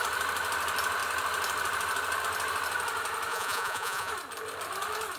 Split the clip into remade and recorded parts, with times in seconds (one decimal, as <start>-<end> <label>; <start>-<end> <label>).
0.0-3.3 recorded; 3.3-4.1 remade; 4.1-5.2 recorded

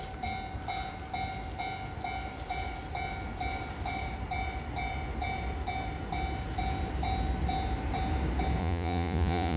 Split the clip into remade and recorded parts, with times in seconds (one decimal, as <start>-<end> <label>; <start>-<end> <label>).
0.0-8.6 recorded; 8.6-9.6 remade

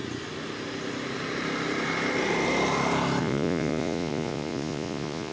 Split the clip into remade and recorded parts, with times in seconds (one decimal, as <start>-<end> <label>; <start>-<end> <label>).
0.0-3.2 recorded; 3.2-5.3 remade

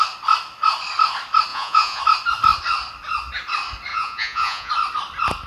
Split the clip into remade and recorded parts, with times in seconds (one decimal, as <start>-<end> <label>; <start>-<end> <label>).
0.0-1.5 recorded; 1.5-2.0 remade; 2.0-3.9 recorded; 3.9-4.7 remade; 4.7-5.5 recorded

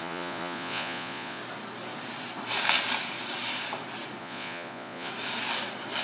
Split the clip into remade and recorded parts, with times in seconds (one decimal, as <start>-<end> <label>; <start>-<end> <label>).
0.0-1.4 remade; 1.4-4.2 recorded; 4.2-5.1 remade; 5.1-6.0 recorded